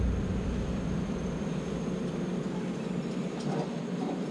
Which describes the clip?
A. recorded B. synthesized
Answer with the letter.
A